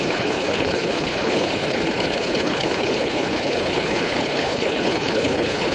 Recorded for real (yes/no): no